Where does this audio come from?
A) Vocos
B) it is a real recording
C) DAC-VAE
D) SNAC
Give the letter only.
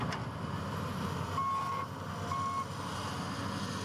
B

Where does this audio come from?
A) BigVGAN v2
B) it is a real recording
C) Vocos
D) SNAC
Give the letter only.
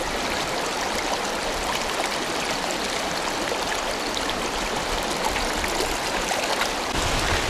B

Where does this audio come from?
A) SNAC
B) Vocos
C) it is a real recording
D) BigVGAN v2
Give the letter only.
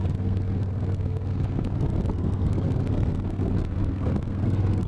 A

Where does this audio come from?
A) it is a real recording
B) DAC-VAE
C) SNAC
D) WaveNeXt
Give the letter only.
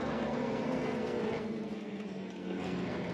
C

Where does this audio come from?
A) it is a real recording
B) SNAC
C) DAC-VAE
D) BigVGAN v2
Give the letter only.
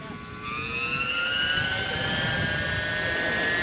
A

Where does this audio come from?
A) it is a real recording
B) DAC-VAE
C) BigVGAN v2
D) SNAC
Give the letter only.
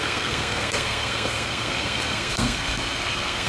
D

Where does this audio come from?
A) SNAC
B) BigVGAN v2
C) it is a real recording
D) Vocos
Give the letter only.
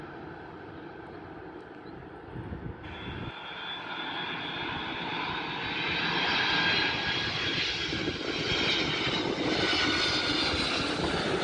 C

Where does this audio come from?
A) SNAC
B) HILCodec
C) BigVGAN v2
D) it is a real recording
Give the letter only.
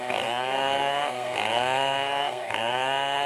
A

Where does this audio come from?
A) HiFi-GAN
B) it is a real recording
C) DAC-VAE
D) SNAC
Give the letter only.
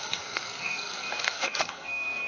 D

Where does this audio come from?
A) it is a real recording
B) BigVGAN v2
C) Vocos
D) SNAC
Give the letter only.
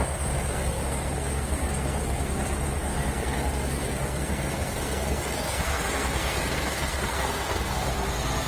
D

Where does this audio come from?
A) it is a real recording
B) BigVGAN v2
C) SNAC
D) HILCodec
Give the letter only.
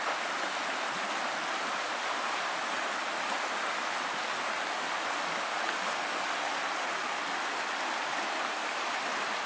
A